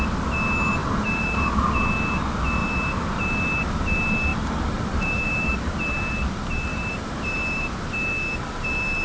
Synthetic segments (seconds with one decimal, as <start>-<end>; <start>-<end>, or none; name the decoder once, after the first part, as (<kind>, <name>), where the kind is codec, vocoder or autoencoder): 0.8-1.6 (vocoder, BigVGAN v2); 4.3-5.7; 6.7-7.7